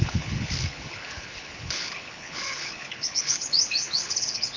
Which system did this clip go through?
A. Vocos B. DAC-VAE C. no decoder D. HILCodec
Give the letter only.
D